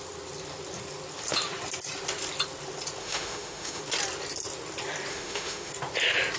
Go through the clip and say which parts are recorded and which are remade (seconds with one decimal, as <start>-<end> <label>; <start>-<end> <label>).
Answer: 0.0-3.0 recorded; 3.0-3.8 remade; 3.8-5.1 recorded; 5.1-5.7 remade; 5.7-6.4 recorded